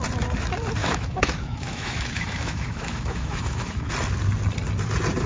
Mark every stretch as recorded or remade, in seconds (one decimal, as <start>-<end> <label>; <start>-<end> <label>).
0.0-0.8 recorded; 0.8-3.9 remade; 3.9-5.3 recorded